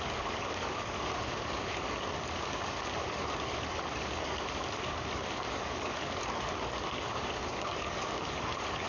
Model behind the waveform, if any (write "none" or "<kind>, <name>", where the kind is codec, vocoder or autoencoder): codec, DAC